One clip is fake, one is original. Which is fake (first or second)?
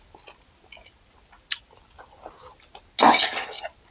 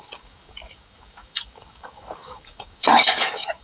second